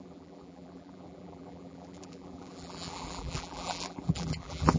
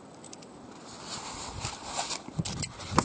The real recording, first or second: second